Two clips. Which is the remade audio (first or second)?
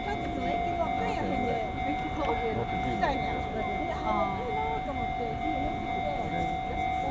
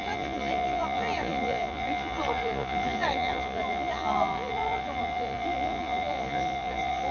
second